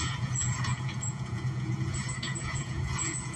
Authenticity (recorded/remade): remade